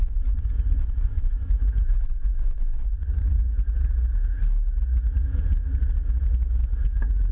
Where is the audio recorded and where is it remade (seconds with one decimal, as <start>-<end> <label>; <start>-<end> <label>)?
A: 0.0-3.4 remade; 3.4-7.3 recorded